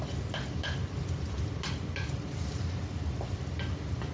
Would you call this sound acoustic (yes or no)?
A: yes